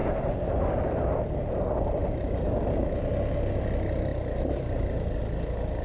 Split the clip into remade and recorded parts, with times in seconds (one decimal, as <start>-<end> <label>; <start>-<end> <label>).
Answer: 0.0-2.0 recorded; 2.0-2.6 remade; 2.6-4.1 recorded; 4.1-4.8 remade; 4.8-5.8 recorded